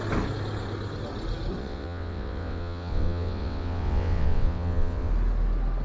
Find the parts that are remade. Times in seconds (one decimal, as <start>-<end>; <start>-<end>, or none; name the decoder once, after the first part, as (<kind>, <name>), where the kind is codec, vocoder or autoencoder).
1.6-5.1 (vocoder, WaveNeXt)